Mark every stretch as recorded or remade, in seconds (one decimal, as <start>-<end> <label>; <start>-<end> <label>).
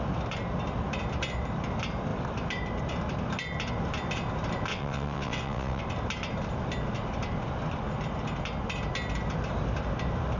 0.0-4.7 recorded; 4.7-5.8 remade; 5.8-10.4 recorded